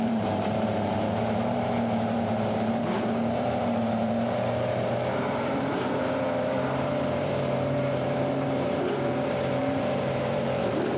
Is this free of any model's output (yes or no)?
no